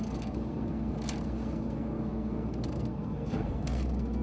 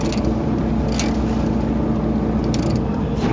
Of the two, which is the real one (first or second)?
second